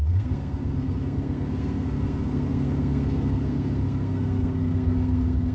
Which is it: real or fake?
fake